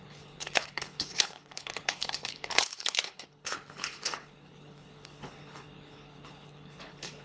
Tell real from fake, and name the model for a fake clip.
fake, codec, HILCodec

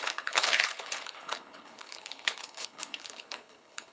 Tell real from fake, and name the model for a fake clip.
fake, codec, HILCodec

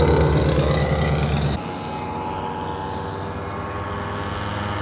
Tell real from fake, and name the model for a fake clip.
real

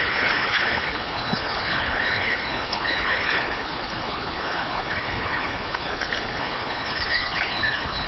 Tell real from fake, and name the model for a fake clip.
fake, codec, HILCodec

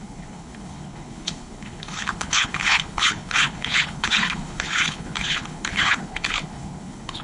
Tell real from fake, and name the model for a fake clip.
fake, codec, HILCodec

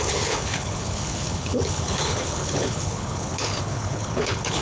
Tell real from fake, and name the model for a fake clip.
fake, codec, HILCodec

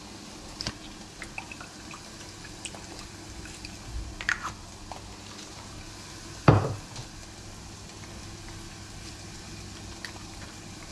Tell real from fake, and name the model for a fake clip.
real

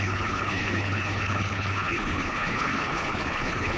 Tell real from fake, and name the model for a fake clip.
fake, codec, HILCodec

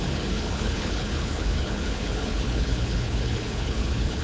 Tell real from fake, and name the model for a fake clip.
fake, codec, HILCodec